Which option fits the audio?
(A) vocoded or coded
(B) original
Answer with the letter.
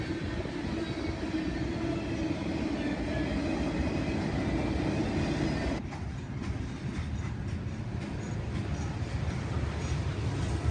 B